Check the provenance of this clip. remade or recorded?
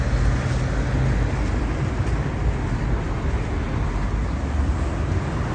recorded